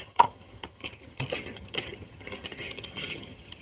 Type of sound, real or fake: fake